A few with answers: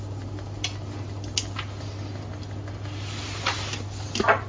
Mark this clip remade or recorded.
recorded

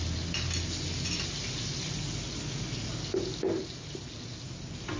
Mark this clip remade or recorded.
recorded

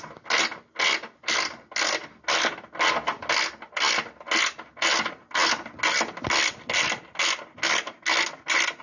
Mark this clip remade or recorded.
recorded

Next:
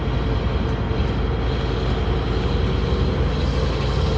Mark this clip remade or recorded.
recorded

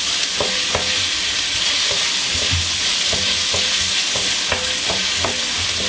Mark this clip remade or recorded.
recorded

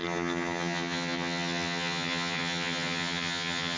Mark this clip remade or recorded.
remade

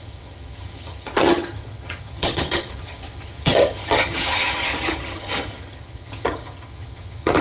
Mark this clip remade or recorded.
remade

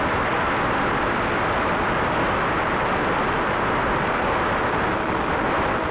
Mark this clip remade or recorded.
recorded